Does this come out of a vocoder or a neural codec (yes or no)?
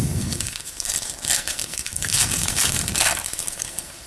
yes